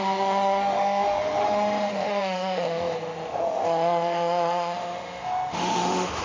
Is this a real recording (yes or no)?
no